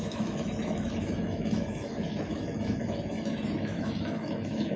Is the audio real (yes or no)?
no